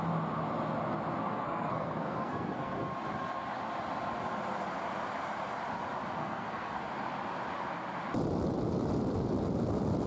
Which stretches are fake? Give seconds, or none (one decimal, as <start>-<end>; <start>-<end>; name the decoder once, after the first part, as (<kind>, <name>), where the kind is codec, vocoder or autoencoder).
1.2-2.7 (codec, SNAC); 6.2-6.8